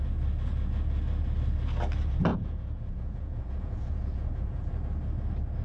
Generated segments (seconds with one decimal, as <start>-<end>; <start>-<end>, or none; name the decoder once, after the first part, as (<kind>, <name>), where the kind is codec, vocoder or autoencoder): 2.3-4.6 (vocoder, Vocos)